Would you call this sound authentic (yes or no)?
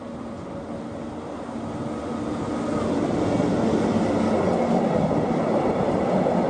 yes